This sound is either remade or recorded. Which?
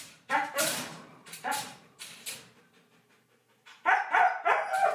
remade